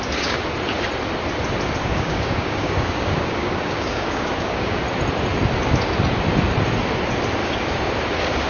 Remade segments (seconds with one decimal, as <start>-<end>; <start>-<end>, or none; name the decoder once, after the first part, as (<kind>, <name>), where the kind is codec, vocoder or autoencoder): 1.8-4.8 (codec, DAC); 7.4-7.9